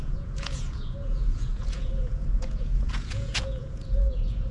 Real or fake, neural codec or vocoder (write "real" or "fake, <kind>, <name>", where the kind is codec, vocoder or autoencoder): fake, vocoder, Vocos